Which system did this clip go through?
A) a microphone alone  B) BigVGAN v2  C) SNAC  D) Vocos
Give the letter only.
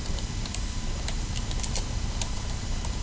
B